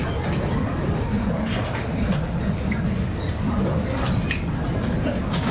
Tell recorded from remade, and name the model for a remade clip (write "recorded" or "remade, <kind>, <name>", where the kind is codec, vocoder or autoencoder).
recorded